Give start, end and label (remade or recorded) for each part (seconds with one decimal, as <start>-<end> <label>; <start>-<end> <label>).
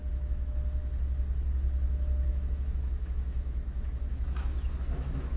0.0-0.8 remade; 0.8-2.3 recorded; 2.3-5.4 remade